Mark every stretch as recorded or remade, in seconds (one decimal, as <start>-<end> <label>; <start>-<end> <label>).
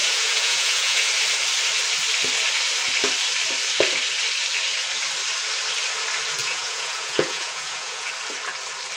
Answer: 0.0-1.1 remade; 1.1-6.4 recorded; 6.4-8.1 remade; 8.1-9.0 recorded